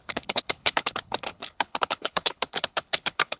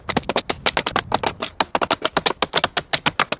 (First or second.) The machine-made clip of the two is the first